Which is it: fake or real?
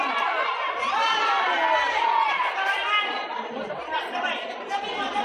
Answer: real